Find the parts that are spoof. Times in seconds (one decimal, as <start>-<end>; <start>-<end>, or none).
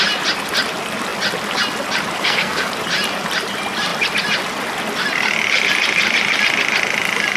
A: 2.2-2.7